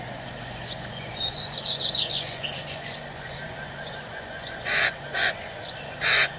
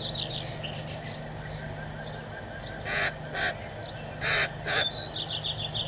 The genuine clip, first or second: second